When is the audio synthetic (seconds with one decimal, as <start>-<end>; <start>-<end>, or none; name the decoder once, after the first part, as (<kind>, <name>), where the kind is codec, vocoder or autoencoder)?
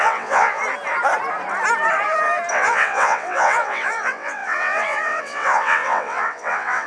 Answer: 0.0-0.6 (vocoder, WaveNeXt); 2.5-6.9